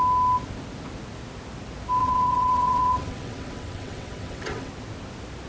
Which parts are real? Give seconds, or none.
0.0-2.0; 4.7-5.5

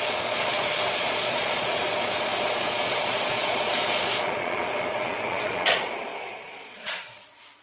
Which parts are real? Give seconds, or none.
none

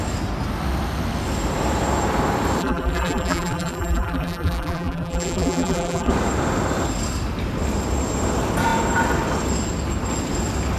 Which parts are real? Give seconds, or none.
0.0-2.6; 6.1-10.8

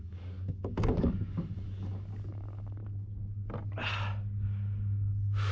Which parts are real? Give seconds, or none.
2.8-5.5

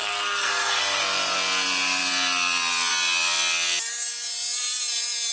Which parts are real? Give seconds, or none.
1.0-5.3

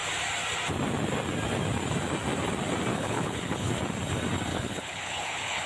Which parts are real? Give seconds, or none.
0.0-2.9; 3.7-4.5

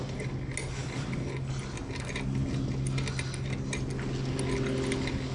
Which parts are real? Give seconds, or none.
0.0-5.3